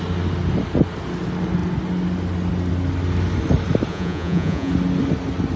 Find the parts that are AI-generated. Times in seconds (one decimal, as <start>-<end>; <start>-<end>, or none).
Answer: 3.9-4.7